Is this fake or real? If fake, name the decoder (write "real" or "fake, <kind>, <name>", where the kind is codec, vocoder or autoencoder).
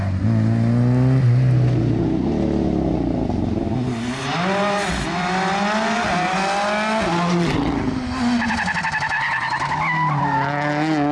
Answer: real